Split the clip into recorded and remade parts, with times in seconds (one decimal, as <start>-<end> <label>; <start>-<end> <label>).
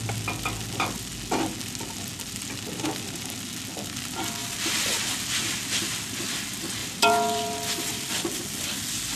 0.0-4.4 recorded; 4.4-5.4 remade; 5.4-6.8 recorded; 6.8-8.1 remade; 8.1-9.2 recorded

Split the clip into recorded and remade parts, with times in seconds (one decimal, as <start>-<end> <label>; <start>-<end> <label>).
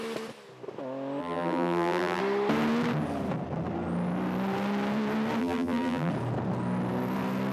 0.0-1.2 recorded; 1.2-2.2 remade; 2.2-5.4 recorded; 5.4-6.1 remade; 6.1-7.5 recorded